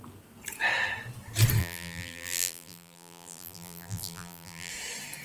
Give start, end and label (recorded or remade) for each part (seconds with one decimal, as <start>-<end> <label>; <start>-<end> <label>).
0.0-1.6 recorded; 1.6-4.7 remade; 4.7-5.2 recorded